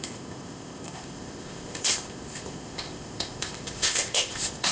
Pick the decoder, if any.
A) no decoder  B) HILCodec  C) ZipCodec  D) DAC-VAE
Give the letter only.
C